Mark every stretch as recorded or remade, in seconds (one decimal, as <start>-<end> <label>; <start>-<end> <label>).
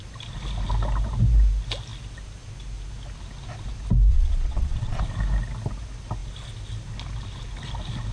0.0-4.1 recorded; 4.1-5.0 remade; 5.0-8.1 recorded